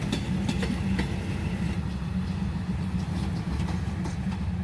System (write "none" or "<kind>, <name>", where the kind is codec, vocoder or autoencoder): none